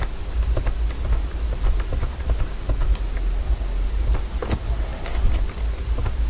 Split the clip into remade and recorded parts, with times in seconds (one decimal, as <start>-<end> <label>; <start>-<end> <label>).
0.0-6.3 recorded